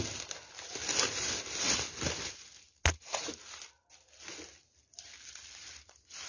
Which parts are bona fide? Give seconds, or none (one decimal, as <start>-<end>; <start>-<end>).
0.0-6.3